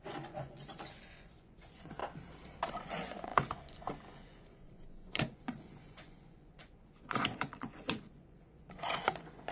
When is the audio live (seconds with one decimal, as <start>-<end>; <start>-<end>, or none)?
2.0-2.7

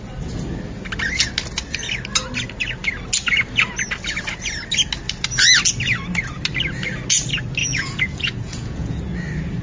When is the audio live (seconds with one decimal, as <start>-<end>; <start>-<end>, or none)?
0.0-7.6; 9.0-9.6

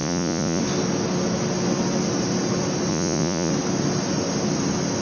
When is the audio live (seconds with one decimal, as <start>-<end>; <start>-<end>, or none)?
0.6-2.9; 3.5-5.0

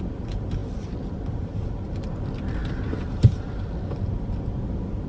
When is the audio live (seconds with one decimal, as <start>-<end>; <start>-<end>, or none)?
0.0-5.1